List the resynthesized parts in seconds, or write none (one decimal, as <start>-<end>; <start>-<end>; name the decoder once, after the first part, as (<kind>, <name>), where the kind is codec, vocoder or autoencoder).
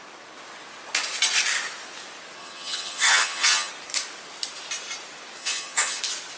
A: 2.4-3.7 (vocoder, HiFi-GAN); 5.4-6.0